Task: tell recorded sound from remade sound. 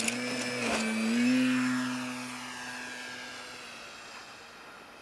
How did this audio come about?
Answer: recorded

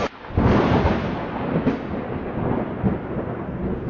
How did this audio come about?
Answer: recorded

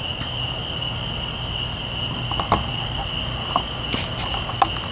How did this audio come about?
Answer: recorded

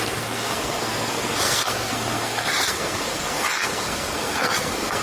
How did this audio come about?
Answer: remade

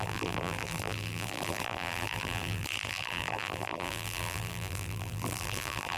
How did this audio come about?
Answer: remade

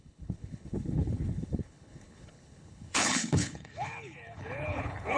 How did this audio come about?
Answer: remade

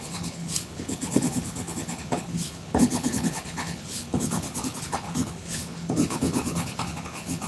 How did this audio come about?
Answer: remade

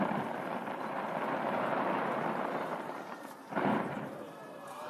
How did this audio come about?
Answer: remade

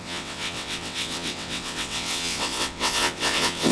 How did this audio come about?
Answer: remade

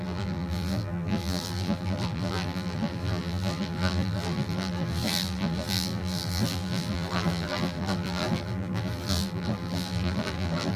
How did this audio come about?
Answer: remade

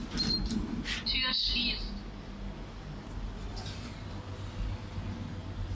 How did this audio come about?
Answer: recorded